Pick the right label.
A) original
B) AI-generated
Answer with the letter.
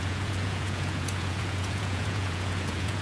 B